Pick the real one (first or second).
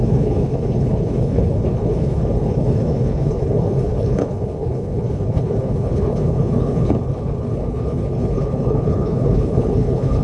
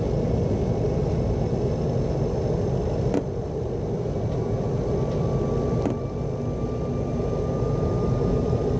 second